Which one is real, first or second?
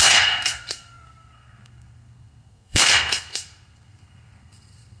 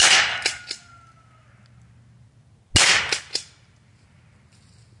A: second